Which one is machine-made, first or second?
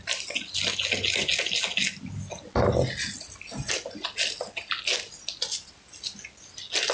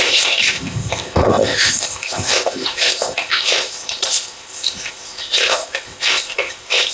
second